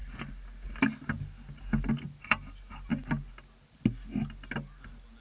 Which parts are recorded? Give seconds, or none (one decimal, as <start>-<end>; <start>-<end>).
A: 0.0-5.2